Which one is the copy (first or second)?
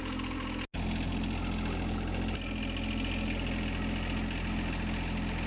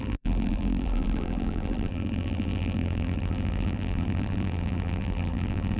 second